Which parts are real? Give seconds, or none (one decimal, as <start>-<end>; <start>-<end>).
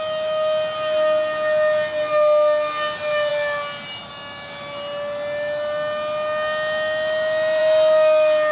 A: 0.0-8.5